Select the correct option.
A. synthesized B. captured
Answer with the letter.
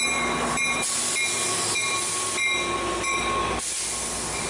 B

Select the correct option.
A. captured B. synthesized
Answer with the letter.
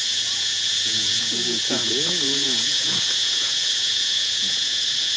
B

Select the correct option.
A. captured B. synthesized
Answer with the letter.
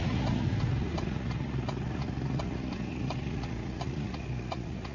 B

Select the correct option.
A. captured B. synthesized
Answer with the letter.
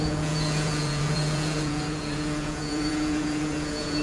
B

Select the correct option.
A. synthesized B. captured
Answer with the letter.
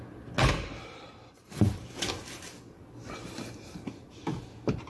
B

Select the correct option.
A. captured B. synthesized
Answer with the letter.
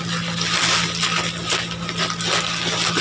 A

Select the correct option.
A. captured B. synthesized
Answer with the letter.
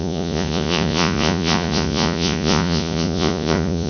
B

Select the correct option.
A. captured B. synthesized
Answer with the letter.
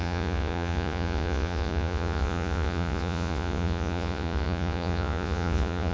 B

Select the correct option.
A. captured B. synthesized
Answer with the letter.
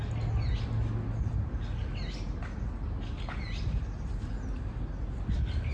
A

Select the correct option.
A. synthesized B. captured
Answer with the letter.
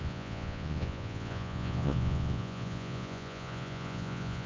A